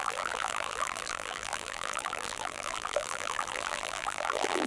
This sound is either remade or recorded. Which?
remade